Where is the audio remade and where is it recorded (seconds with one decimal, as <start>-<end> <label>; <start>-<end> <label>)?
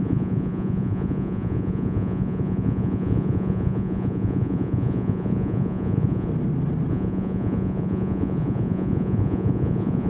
0.0-6.3 remade; 6.3-6.9 recorded; 6.9-10.1 remade